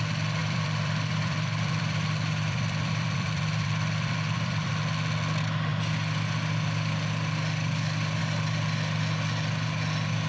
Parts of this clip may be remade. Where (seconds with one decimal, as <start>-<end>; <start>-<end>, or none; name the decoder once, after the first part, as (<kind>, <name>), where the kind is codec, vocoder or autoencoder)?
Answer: 0.4-4.7 (vocoder, BigVGAN v2)